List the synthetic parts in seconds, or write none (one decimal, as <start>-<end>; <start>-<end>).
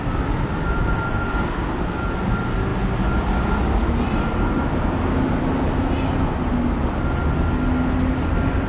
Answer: none